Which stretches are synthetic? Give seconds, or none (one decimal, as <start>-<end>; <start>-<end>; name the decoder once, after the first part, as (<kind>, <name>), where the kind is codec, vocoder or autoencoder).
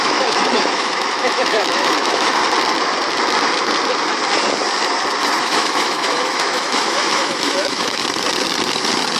0.0-2.4 (autoencoder, DAC-VAE); 5.4-8.0